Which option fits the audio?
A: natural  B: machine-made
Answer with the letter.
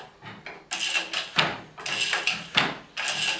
A